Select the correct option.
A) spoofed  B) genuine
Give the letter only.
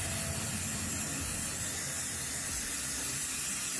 B